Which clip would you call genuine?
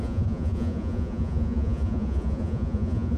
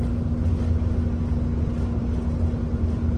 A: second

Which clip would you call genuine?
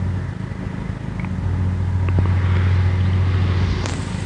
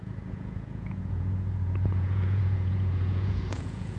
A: first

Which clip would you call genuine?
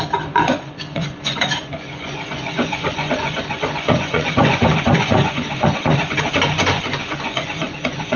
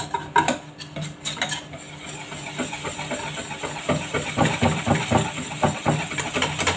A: second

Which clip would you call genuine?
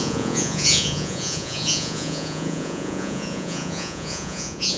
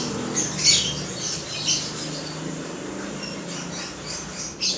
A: second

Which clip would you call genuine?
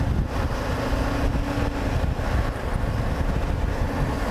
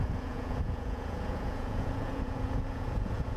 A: first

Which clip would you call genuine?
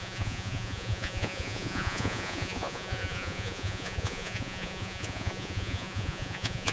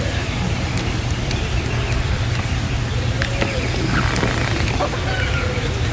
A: second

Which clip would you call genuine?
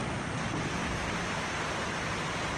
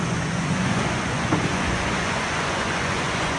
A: first